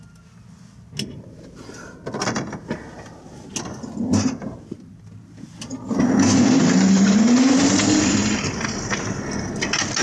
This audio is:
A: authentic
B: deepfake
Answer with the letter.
A